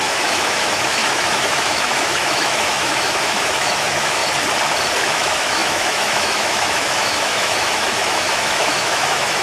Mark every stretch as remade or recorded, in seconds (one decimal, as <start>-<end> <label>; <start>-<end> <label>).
0.0-4.2 remade; 4.2-5.0 recorded; 5.0-9.4 remade